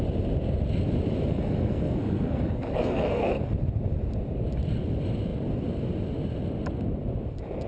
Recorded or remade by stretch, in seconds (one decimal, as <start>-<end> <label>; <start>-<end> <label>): 0.0-1.3 recorded; 1.3-3.4 remade; 3.4-7.7 recorded